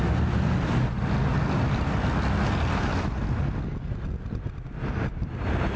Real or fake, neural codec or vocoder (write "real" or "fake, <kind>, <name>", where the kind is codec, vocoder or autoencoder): real